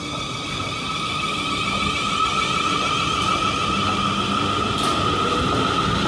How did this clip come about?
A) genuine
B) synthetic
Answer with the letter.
A